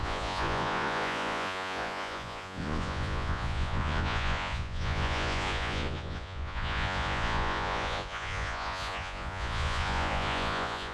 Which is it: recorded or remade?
remade